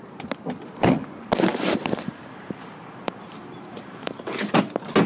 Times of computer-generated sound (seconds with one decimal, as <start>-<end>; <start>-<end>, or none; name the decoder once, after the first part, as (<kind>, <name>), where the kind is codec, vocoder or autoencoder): 1.5-4.6 (vocoder, BigVGAN v2)